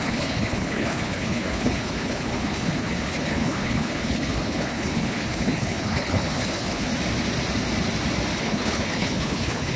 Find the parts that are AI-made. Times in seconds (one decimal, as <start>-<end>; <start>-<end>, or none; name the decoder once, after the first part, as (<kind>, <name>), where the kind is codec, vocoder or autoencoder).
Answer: 0.0-6.9 (codec, HILCodec); 8.4-9.8